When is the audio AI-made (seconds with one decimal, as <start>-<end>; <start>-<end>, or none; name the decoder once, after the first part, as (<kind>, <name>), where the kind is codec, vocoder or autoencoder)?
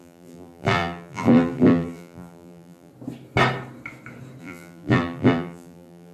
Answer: 0.0-2.9 (vocoder, BigVGAN v2); 4.4-6.1